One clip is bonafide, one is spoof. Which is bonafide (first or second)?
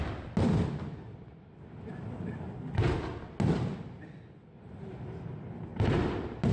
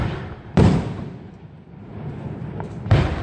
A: first